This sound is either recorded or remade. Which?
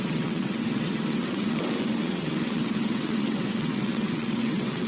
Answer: remade